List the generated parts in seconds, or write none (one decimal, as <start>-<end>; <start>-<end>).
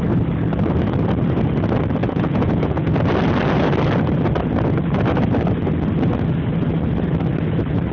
2.0-2.9